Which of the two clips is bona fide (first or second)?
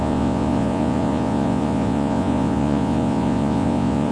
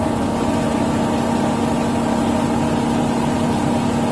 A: second